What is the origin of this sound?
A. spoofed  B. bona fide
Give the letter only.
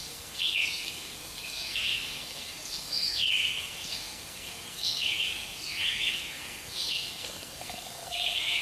A